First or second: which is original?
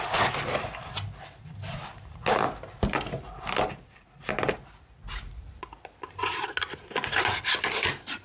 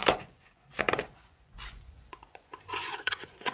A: first